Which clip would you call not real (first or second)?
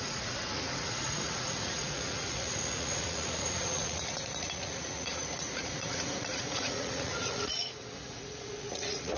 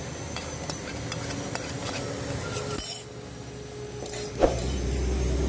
first